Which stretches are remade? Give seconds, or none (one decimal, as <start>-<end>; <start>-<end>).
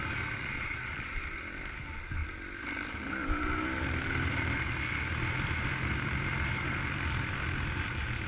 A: 0.4-1.1